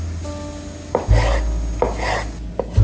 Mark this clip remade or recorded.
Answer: recorded